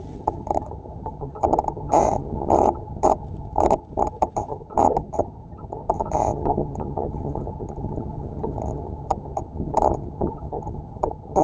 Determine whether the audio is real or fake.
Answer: fake